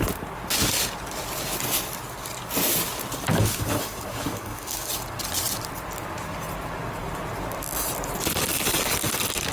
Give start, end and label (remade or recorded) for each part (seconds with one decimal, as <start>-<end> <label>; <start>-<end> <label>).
0.0-3.3 recorded; 3.3-4.9 remade; 4.9-9.5 recorded